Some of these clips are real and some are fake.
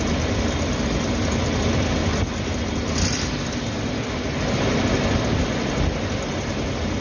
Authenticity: real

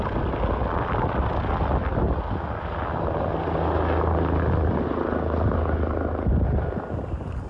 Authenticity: real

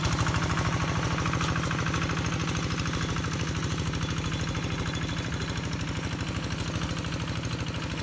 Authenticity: real